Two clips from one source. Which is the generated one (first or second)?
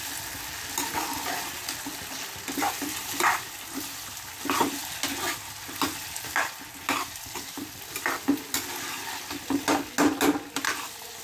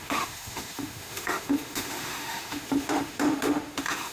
second